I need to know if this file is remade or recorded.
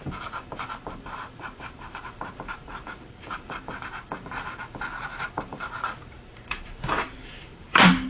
remade